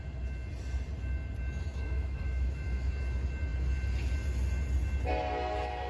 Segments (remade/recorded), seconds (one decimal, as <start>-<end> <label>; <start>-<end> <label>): 0.0-1.7 recorded; 1.7-2.9 remade; 2.9-5.9 recorded